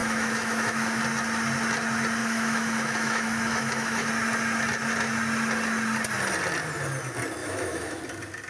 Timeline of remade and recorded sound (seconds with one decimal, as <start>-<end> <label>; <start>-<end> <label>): 0.0-1.0 remade; 1.0-2.2 recorded; 2.2-4.1 remade; 4.1-7.4 recorded; 7.4-8.0 remade; 8.0-8.5 recorded